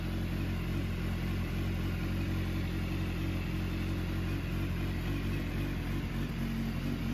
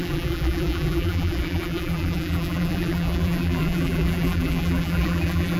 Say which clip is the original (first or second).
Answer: first